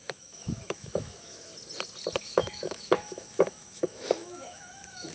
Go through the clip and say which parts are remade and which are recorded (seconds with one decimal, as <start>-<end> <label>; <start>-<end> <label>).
0.0-1.5 remade; 1.5-2.2 recorded; 2.2-5.1 remade